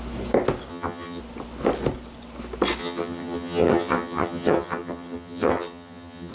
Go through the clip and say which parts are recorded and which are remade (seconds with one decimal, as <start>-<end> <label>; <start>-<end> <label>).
0.0-0.7 recorded; 0.7-1.2 remade; 1.2-2.8 recorded; 2.8-6.3 remade